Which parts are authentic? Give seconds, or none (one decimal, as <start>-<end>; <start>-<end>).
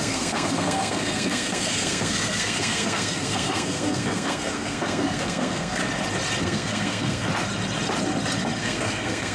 5.8-6.4; 7.3-8.6